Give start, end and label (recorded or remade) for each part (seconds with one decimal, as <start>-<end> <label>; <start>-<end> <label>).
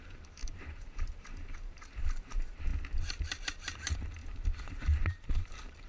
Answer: 0.0-2.7 remade; 2.7-3.4 recorded; 3.4-5.9 remade